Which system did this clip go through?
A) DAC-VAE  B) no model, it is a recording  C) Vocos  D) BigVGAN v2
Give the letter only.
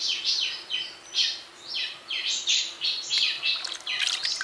B